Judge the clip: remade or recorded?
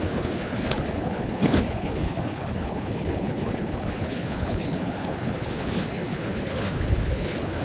remade